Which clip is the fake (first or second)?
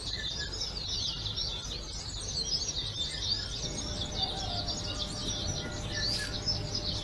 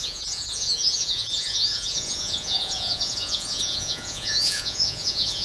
second